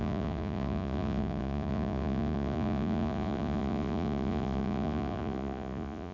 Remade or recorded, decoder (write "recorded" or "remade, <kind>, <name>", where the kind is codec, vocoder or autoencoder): remade, vocoder, Vocos